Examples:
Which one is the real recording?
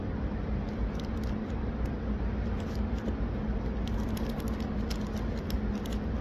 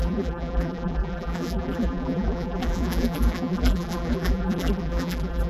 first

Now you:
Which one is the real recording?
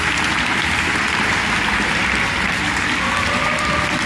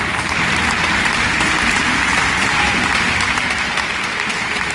first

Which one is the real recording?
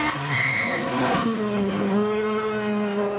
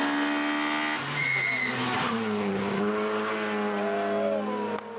second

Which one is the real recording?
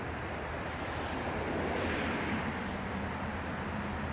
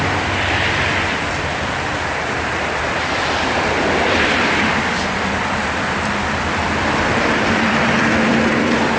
first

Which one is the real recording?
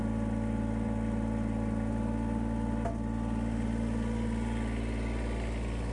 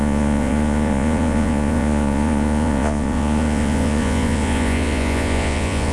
first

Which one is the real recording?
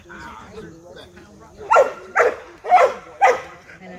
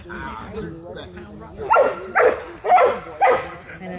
second